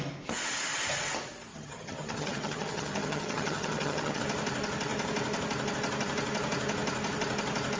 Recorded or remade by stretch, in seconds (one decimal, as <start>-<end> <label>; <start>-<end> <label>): 0.0-1.5 recorded; 1.5-4.2 remade; 4.2-7.8 recorded